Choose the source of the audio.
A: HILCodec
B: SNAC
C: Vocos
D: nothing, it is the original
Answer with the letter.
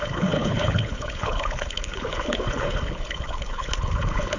A